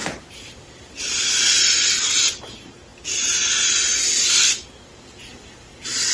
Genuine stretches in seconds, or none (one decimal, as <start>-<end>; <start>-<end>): 1.6-6.1